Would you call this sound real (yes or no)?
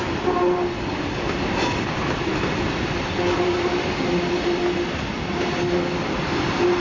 yes